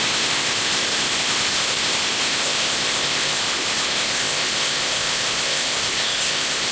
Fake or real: fake